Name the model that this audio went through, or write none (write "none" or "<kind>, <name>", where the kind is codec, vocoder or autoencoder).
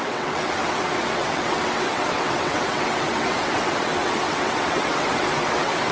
vocoder, WaveNeXt